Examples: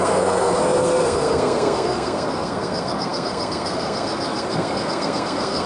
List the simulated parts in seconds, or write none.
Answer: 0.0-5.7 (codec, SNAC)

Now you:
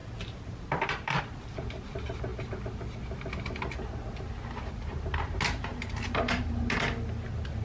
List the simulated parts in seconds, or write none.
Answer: 0.0-1.2 (vocoder, BigVGAN v2); 5.7-6.4

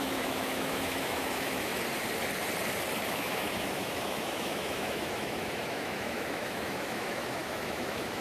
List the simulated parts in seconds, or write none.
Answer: 0.0-1.7 (autoencoder, DAC-VAE); 3.0-8.2

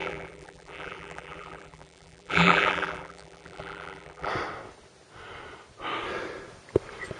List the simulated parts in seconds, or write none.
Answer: 0.0-4.3 (vocoder, BigVGAN v2)

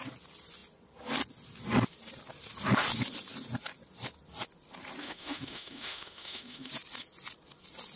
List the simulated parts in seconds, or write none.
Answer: 5.0-6.7 (autoencoder, DAC-VAE)

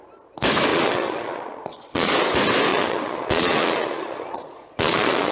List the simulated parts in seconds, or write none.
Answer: 0.7-2.1 (vocoder, Vocos); 2.7-5.3